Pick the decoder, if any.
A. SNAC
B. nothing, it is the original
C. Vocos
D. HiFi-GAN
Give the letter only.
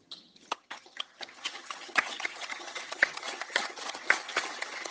D